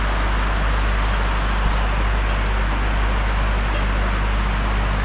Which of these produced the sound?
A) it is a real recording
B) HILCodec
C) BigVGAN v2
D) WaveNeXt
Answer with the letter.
A